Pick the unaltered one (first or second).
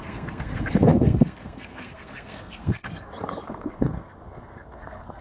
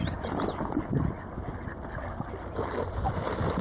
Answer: second